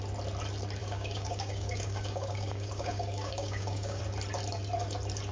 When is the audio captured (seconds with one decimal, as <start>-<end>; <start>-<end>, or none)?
0.0-0.8; 4.0-5.3